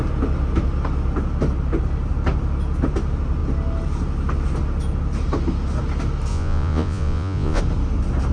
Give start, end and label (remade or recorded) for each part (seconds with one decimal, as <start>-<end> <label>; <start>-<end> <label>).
0.0-6.3 recorded; 6.3-7.6 remade; 7.6-8.3 recorded